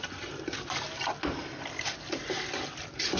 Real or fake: real